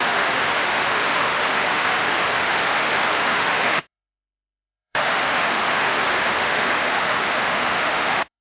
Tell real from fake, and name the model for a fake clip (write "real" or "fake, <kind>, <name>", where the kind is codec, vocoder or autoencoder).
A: fake, autoencoder, DAC-VAE